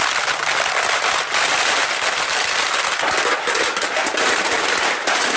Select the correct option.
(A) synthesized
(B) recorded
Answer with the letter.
B